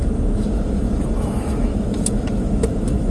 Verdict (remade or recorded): remade